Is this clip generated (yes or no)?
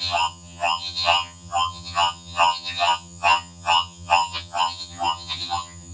yes